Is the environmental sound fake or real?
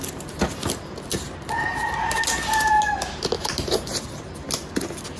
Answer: real